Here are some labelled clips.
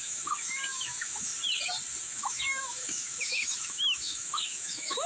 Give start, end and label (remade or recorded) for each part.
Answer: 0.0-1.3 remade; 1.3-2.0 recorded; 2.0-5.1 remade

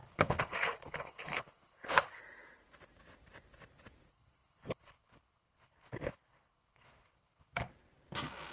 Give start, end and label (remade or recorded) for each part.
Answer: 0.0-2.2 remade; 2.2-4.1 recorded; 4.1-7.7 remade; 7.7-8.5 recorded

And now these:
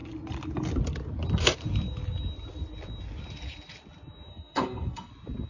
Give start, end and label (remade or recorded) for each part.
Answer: 0.0-4.3 recorded; 4.3-5.1 remade; 5.1-5.5 recorded

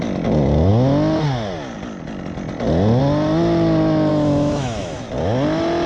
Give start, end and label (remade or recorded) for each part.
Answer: 0.0-4.1 recorded; 4.1-5.1 remade; 5.1-5.9 recorded

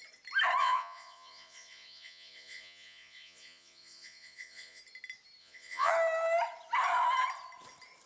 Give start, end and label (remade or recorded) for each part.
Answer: 0.0-0.6 recorded; 0.6-4.8 remade; 4.8-5.4 recorded; 5.4-5.9 remade; 5.9-8.1 recorded

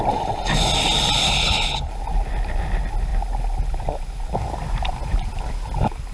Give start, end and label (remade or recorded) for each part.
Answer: 0.0-1.2 recorded; 1.2-1.9 remade; 1.9-6.1 recorded

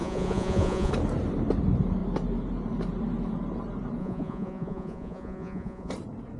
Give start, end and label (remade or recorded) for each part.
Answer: 0.0-0.9 remade; 0.9-4.0 recorded; 4.0-5.9 remade; 5.9-6.4 recorded